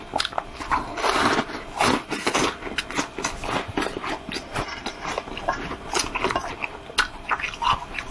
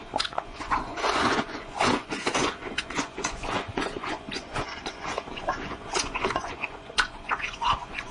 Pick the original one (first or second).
first